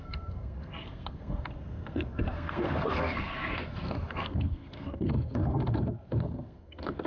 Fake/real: fake